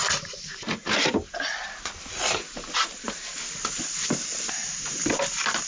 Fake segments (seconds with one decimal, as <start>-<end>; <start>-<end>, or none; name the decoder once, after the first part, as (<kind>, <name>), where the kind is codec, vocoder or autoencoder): none